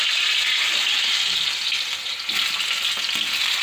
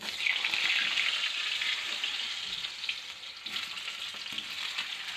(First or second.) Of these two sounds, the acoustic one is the first